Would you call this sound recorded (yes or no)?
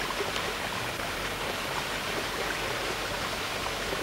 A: yes